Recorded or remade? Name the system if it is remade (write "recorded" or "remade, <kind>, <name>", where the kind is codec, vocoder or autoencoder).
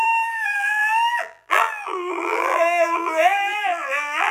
remade, vocoder, BigVGAN v2